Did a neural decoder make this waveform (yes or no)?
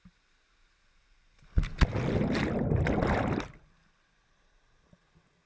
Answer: no